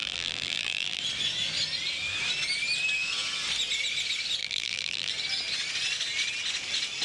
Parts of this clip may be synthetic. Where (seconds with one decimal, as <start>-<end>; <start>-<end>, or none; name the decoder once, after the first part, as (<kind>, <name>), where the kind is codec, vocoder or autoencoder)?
0.0-1.0 (vocoder, BigVGAN v2); 4.4-5.1